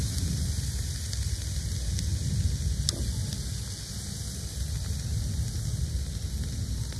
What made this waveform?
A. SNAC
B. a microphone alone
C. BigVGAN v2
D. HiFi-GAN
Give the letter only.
B